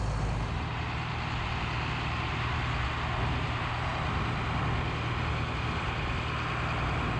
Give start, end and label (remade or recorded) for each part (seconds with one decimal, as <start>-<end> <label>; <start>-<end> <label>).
0.0-7.2 recorded